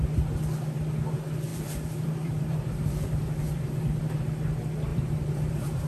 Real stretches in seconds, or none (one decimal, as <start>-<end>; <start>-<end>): 0.0-1.5; 4.0-4.9